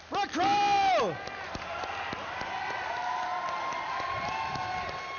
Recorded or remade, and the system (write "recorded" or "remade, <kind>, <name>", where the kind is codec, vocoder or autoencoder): recorded